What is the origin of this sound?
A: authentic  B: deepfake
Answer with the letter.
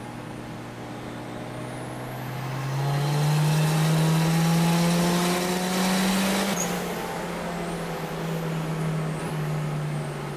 A